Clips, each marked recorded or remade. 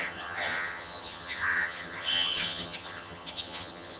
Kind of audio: remade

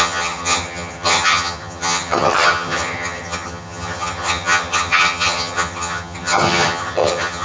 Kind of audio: remade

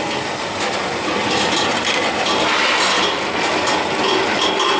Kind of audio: recorded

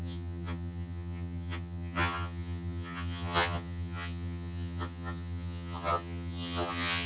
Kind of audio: remade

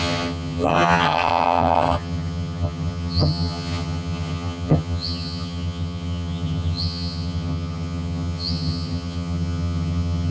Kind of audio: remade